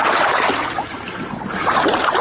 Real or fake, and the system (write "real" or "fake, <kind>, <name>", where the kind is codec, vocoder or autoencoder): real